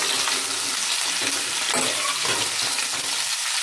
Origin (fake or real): real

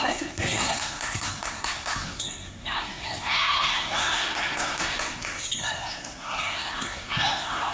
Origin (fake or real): fake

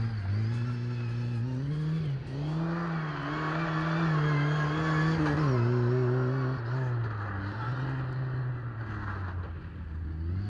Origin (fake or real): real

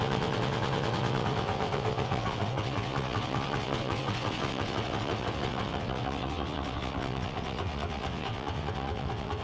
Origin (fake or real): fake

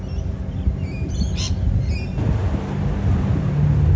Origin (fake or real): real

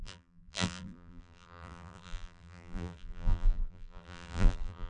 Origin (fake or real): fake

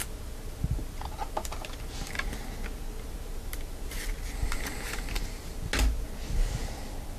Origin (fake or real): real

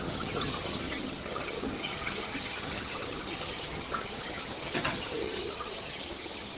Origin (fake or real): fake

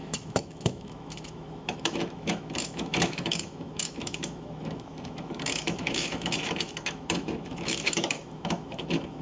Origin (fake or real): fake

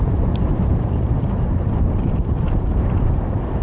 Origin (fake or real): fake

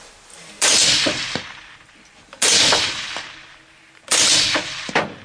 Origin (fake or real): real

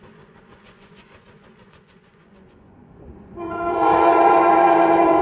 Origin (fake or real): fake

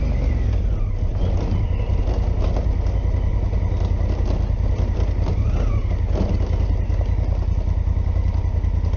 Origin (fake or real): real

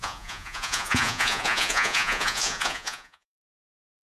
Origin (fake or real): fake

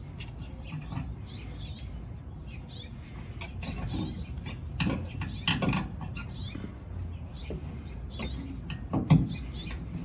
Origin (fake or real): real